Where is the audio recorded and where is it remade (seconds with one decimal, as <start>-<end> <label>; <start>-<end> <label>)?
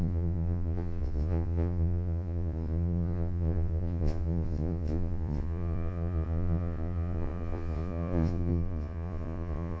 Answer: 0.0-9.8 remade